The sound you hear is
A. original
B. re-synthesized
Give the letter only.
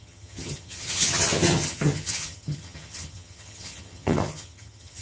B